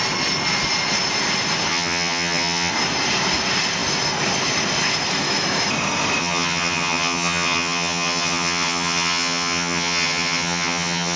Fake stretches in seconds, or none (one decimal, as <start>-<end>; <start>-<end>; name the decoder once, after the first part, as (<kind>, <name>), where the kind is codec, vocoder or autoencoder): 1.7-2.7 (vocoder, HiFi-GAN); 6.2-11.2